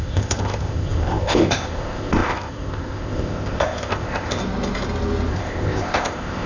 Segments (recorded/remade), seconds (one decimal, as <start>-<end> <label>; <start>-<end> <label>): 0.0-4.4 remade; 4.4-5.3 recorded; 5.3-6.5 remade